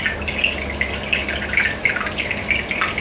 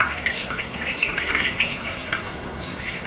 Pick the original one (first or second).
first